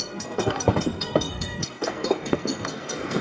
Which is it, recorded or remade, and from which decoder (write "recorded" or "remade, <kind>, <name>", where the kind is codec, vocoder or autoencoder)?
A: remade, codec, SNAC